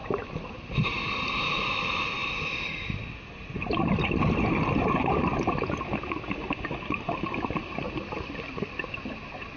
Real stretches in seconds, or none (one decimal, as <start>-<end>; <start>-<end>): 0.0-6.4; 7.3-9.6

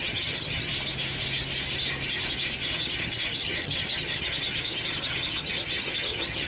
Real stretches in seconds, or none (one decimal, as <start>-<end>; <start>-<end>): 0.7-2.6

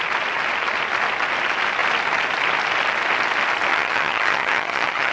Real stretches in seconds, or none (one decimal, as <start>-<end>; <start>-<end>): 0.0-3.7

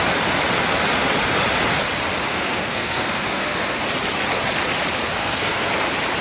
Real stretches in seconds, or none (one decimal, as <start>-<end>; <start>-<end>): 0.0-2.3; 3.8-5.2; 5.7-6.2

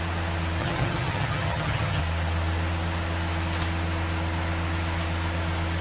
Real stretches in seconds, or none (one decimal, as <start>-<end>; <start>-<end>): 0.0-0.6; 2.0-5.8